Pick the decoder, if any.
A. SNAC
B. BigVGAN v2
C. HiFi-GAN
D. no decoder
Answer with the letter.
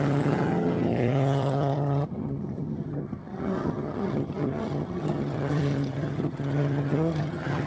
C